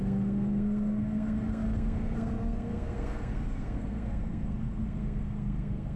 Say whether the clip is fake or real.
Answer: fake